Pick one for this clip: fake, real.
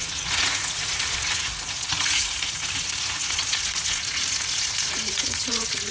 fake